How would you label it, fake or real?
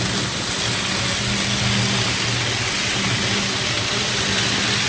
real